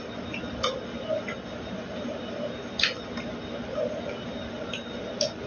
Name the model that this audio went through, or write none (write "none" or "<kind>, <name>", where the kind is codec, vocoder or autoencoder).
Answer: none